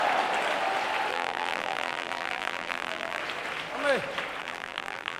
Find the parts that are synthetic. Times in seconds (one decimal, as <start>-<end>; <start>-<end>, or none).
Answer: 1.1-3.2; 4.4-5.2